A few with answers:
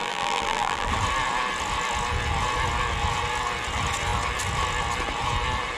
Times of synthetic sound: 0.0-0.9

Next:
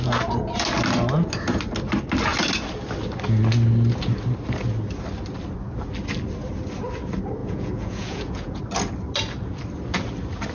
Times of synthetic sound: 7.4-8.6